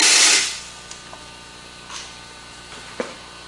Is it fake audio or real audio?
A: real